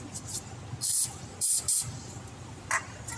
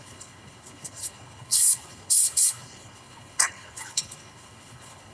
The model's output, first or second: second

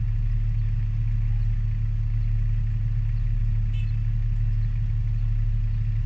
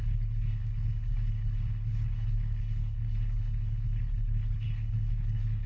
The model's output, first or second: second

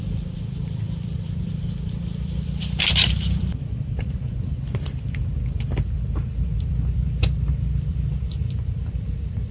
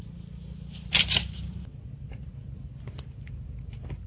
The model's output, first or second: first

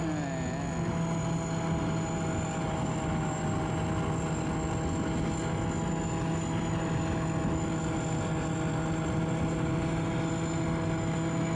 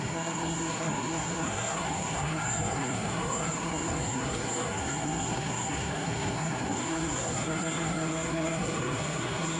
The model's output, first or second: second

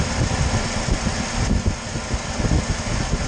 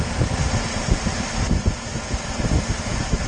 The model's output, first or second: second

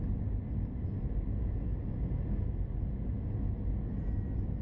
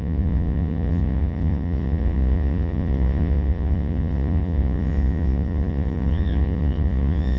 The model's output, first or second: second